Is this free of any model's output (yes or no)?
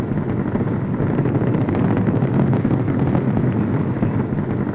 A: yes